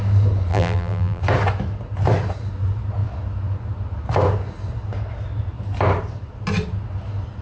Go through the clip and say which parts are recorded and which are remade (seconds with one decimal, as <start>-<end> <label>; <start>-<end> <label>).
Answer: 0.0-0.5 recorded; 0.5-1.2 remade; 1.2-7.4 recorded